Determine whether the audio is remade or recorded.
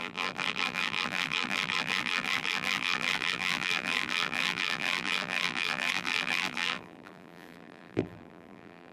remade